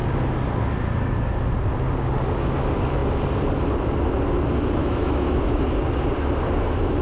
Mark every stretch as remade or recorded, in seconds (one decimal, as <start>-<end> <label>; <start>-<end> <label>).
0.0-4.8 recorded; 4.8-5.6 remade; 5.6-7.0 recorded